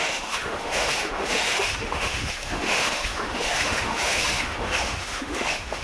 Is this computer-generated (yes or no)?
yes